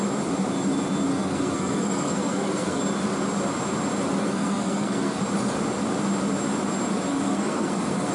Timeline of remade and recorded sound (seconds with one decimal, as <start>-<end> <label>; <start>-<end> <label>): 0.0-1.1 recorded; 1.1-2.8 remade; 2.8-4.2 recorded; 4.2-5.2 remade; 5.2-7.1 recorded; 7.1-8.1 remade